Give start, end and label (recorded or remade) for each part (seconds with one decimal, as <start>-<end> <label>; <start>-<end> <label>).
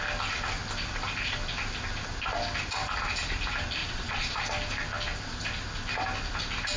0.0-3.8 recorded; 3.8-4.4 remade; 4.4-6.8 recorded